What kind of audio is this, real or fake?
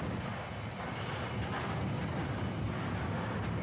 real